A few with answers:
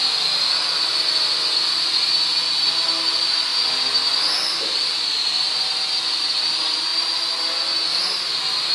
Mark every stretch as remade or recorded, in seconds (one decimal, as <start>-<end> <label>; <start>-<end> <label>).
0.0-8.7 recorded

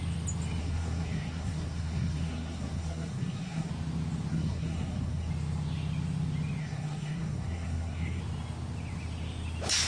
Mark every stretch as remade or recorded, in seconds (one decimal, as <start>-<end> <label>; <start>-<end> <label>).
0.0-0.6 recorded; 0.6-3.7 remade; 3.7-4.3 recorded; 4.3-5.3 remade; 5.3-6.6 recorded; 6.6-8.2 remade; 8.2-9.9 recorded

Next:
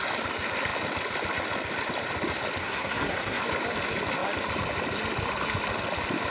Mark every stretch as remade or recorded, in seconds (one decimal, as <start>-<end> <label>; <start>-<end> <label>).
0.0-2.6 recorded; 2.6-3.4 remade; 3.4-6.3 recorded